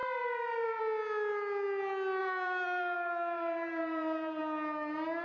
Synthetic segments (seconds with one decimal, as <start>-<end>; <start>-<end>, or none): 0.0-0.8; 2.2-4.4